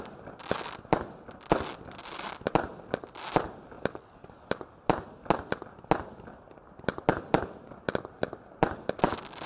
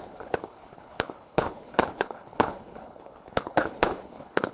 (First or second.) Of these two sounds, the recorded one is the first